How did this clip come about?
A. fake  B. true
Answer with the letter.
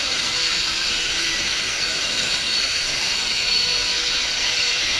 A